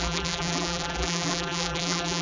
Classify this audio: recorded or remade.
remade